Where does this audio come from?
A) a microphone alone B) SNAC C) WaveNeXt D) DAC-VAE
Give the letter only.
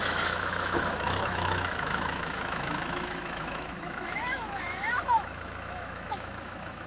D